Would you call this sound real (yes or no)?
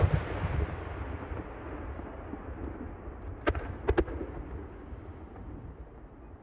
yes